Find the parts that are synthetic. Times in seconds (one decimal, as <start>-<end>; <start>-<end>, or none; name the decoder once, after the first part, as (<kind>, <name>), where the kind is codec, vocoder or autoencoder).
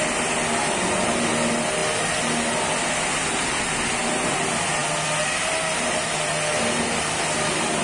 none